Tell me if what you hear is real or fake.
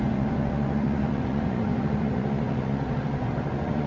fake